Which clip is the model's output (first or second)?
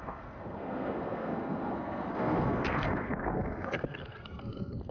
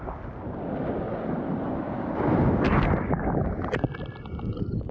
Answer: first